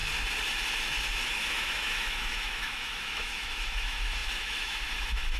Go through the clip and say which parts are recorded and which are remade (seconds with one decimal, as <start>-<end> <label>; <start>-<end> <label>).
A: 0.0-1.2 recorded; 1.2-5.4 remade